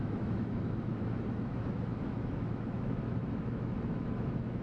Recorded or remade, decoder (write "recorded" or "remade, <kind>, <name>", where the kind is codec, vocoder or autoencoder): remade, autoencoder, DAC-VAE